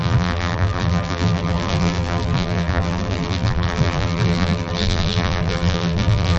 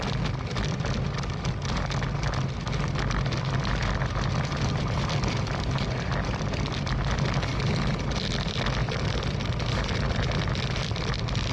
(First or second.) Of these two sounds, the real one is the second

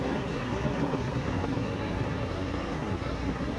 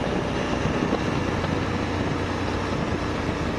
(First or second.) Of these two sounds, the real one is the second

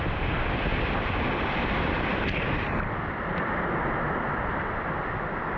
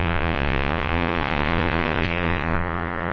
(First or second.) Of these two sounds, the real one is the first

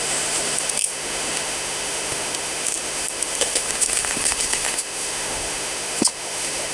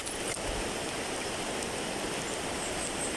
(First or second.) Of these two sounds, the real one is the second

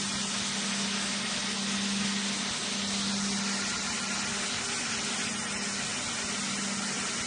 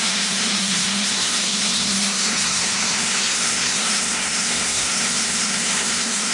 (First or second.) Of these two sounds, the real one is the first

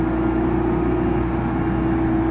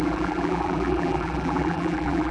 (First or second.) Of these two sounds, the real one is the first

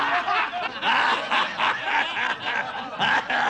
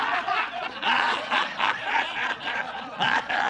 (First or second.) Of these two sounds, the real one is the first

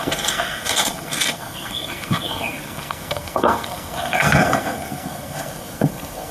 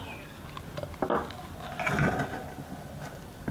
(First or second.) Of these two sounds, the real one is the second